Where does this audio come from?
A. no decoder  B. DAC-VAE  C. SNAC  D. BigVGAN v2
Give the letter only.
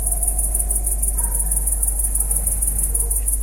A